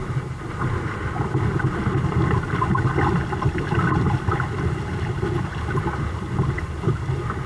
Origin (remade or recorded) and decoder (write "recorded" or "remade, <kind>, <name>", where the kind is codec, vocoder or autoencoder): recorded